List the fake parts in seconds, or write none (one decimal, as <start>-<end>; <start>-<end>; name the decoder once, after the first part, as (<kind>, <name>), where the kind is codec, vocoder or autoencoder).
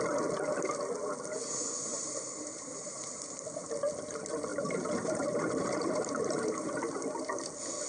1.9-3.2 (vocoder, BigVGAN v2); 4.5-6.7